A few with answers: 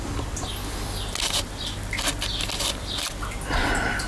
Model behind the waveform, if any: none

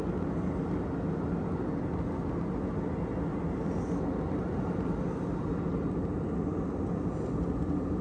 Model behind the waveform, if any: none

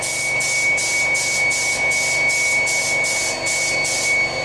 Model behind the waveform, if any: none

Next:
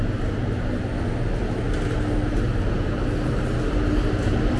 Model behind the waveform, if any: none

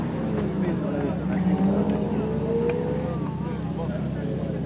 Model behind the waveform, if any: none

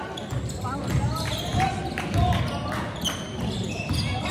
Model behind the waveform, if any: none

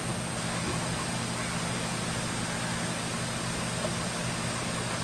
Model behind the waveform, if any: none